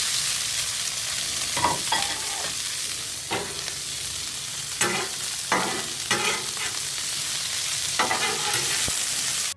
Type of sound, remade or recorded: recorded